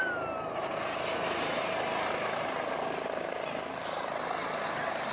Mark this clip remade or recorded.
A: recorded